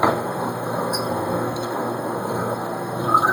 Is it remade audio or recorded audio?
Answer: remade